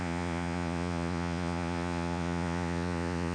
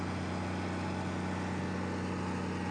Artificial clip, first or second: first